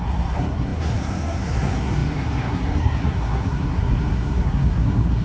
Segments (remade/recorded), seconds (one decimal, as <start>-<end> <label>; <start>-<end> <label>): 0.0-5.2 remade